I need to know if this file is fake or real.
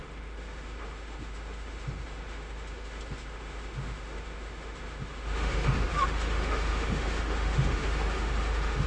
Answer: fake